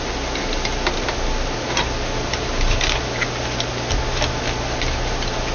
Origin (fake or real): real